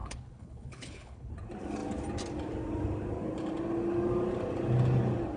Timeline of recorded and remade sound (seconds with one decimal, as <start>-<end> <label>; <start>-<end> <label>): 0.0-1.3 remade; 1.3-5.4 recorded